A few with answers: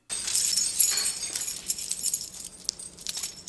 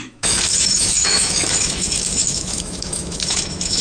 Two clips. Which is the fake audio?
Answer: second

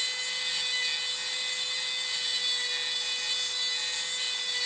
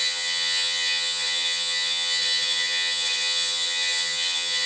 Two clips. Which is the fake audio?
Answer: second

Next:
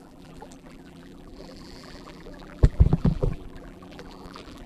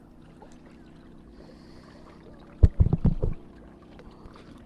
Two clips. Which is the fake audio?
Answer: first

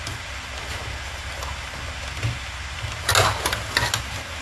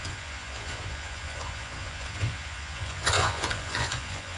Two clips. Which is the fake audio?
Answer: second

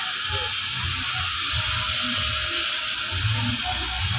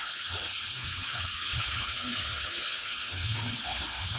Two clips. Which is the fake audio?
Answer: second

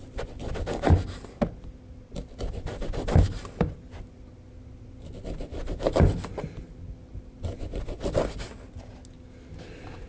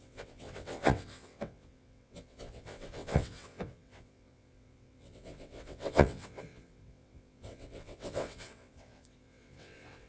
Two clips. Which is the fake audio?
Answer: second